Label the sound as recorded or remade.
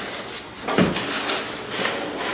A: recorded